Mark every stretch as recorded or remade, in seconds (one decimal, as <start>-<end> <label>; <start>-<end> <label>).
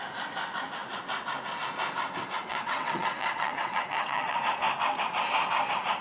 0.0-2.5 recorded; 2.5-4.4 remade; 4.4-6.0 recorded